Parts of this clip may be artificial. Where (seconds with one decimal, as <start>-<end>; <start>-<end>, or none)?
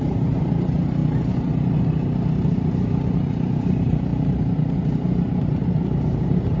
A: 0.0-1.0; 2.6-6.6